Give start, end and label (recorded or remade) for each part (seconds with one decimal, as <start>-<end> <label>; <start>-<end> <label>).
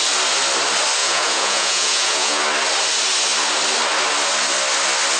0.0-1.0 recorded; 1.0-2.4 remade; 2.4-5.2 recorded